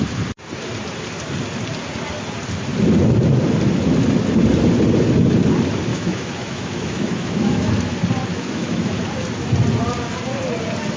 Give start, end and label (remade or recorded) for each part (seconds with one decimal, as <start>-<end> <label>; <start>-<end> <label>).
0.0-5.9 recorded; 5.9-7.7 remade; 7.7-8.3 recorded; 8.3-9.0 remade; 9.0-11.0 recorded